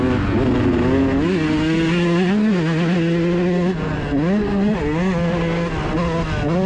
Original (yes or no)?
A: yes